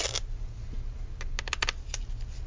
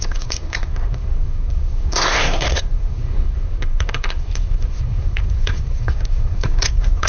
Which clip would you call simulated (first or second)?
second